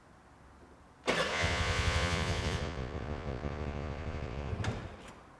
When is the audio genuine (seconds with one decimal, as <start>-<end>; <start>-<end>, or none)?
0.0-1.3; 4.5-5.4